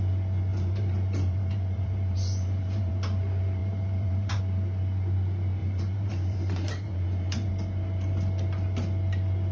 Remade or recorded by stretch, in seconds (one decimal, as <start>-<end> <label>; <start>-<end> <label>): 0.0-0.5 recorded; 0.5-2.9 remade; 2.9-3.6 recorded; 3.6-4.4 remade; 4.4-5.6 recorded; 5.6-7.5 remade; 7.5-9.5 recorded